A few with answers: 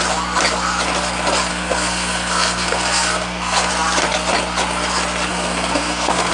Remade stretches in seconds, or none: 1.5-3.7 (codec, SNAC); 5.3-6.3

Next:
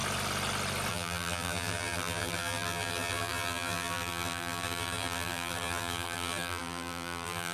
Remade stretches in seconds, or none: 0.9-7.5 (vocoder, BigVGAN v2)

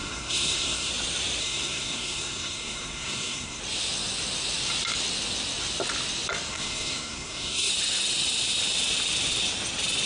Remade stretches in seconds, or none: 0.0-0.9 (codec, SNAC); 1.4-3.6; 6.5-7.7